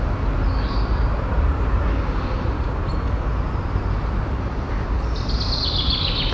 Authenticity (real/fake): real